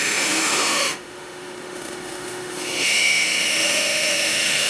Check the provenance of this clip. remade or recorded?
remade